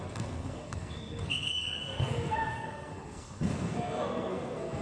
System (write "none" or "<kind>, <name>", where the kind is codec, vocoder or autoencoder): codec, SNAC